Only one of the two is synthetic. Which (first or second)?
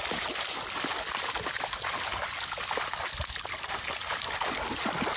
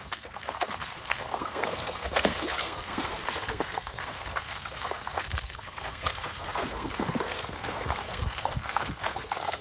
second